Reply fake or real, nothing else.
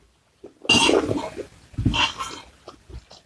real